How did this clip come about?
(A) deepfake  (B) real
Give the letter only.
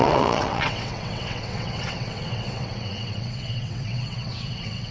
A